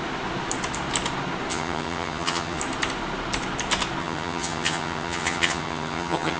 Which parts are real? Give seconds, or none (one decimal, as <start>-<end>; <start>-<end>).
0.0-1.5; 2.6-4.0